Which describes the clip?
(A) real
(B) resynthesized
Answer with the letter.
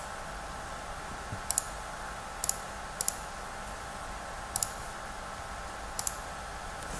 A